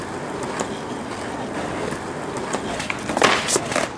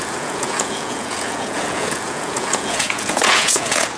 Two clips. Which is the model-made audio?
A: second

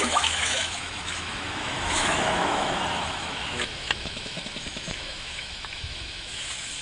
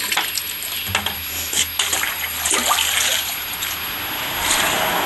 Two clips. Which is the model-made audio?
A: first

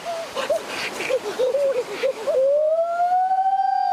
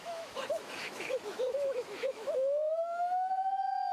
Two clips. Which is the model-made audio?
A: second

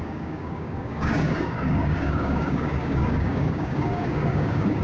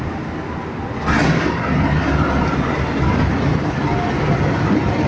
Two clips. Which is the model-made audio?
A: first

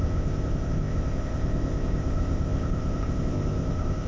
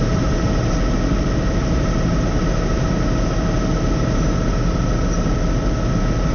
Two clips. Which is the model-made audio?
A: first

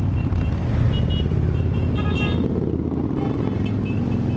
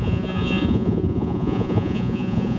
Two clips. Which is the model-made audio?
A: second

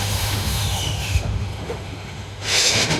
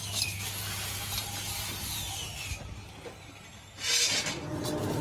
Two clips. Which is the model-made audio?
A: first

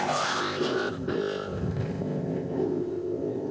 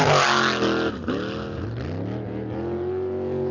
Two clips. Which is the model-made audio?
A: first